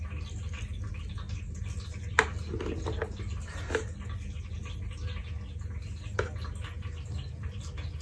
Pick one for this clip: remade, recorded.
recorded